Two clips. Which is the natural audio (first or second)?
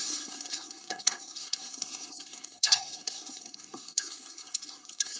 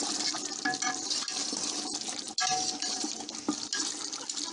second